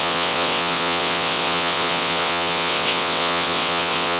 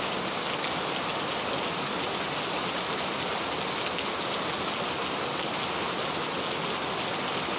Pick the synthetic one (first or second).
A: first